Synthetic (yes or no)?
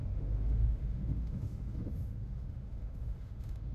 yes